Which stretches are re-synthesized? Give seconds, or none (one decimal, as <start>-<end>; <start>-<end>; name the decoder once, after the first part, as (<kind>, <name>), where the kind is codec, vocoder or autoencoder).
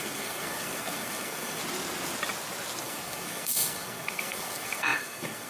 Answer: 0.0-1.6 (codec, SNAC); 2.8-5.5